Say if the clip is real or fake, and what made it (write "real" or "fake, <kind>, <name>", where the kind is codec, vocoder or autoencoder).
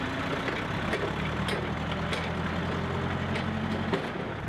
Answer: real